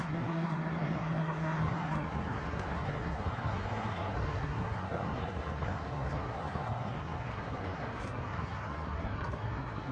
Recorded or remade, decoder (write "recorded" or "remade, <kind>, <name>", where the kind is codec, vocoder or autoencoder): remade, codec, SNAC